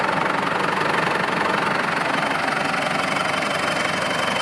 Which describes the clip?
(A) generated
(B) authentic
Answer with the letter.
B